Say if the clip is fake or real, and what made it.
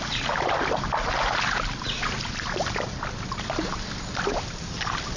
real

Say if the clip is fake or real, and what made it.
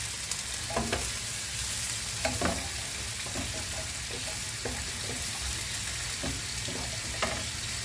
real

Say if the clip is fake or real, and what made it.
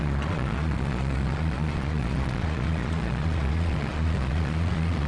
fake, vocoder, Vocos